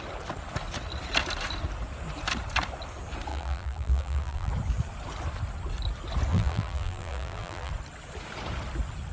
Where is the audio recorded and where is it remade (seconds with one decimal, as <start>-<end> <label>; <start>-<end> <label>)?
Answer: 0.0-3.3 recorded; 3.3-4.5 remade; 4.5-6.3 recorded; 6.3-7.7 remade; 7.7-9.1 recorded